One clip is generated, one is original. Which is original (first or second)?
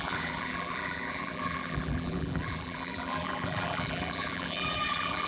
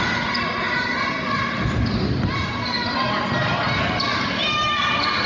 second